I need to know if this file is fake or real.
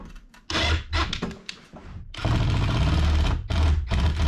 real